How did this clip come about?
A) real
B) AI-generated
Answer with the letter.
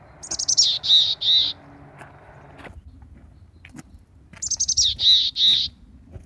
A